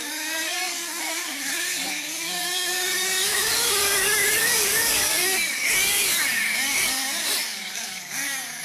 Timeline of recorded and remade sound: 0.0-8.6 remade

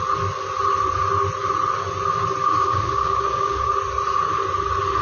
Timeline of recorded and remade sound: 0.0-2.4 recorded; 2.4-3.7 remade; 3.7-5.0 recorded

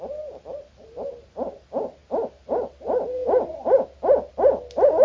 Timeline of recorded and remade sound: 0.0-5.0 recorded

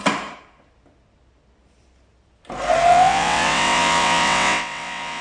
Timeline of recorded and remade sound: 0.0-2.9 recorded; 2.9-5.2 remade

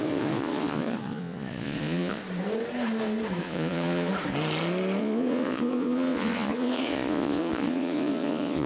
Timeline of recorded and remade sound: 0.0-2.2 remade; 2.2-3.4 recorded; 3.4-4.1 remade; 4.1-5.0 recorded; 5.0-8.7 remade

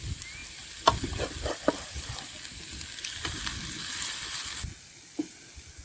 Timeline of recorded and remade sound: 0.0-5.8 recorded

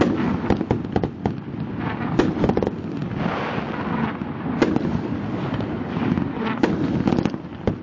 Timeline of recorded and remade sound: 0.0-7.8 recorded

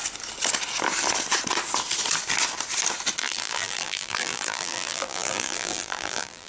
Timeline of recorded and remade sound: 0.0-3.2 recorded; 3.2-6.5 remade